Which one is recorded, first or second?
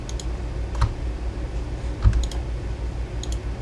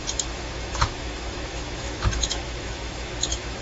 first